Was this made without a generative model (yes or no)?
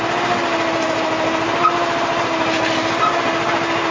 yes